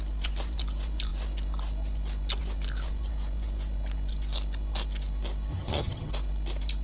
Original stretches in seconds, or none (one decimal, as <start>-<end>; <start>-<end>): 0.0-5.5; 6.1-6.8